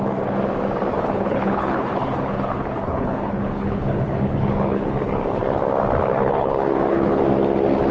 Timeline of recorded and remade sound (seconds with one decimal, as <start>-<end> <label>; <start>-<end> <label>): 0.0-0.9 recorded; 0.9-5.4 remade; 5.4-6.1 recorded; 6.1-7.2 remade; 7.2-7.9 recorded